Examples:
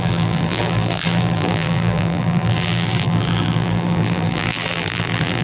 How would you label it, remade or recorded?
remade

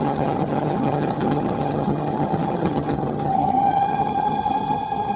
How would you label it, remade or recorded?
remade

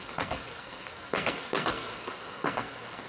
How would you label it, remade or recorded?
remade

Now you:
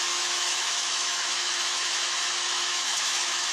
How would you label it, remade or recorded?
remade